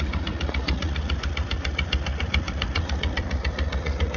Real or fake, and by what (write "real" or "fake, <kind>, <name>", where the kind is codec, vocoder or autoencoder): fake, vocoder, Vocos